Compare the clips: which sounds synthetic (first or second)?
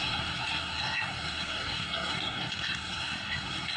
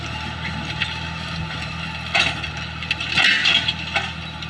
first